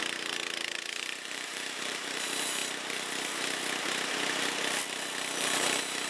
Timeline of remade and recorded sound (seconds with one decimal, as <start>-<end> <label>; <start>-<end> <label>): 0.0-2.6 remade; 2.6-5.4 recorded; 5.4-6.1 remade